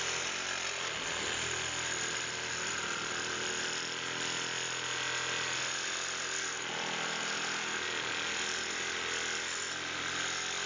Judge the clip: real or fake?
real